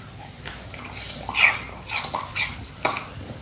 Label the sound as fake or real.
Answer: real